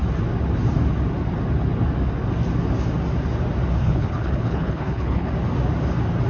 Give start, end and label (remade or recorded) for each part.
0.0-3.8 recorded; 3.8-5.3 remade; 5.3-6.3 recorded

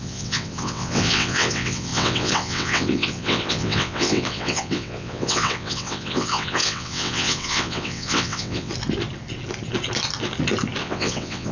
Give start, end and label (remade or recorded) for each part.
0.0-8.7 remade; 8.7-10.8 recorded; 10.8-11.5 remade

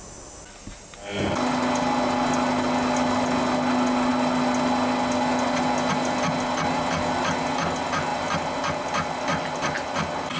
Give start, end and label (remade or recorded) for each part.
0.0-10.4 recorded

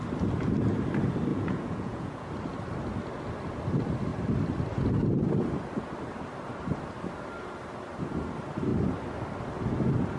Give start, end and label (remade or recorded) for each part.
0.0-1.3 recorded; 1.3-2.3 remade; 2.3-10.2 recorded

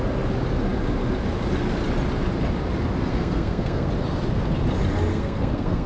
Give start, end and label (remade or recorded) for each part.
0.0-3.1 recorded; 3.1-3.9 remade; 3.9-5.1 recorded; 5.1-5.9 remade

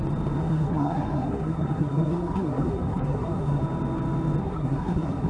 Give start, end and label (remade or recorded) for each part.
0.0-0.4 recorded; 0.4-3.6 remade; 3.6-4.4 recorded; 4.4-5.3 remade